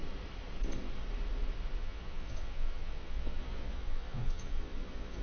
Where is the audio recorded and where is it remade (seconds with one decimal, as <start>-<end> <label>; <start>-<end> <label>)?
0.0-1.8 recorded; 1.8-5.2 remade